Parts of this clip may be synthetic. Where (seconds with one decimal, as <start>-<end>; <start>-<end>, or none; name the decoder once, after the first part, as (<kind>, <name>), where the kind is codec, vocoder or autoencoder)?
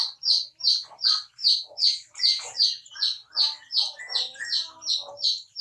0.0-1.4 (vocoder, BigVGAN v2); 1.9-3.2; 5.1-5.6